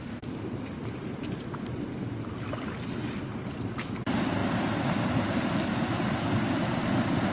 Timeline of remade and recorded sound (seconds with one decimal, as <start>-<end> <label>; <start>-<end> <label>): 0.0-4.4 recorded; 4.4-7.3 remade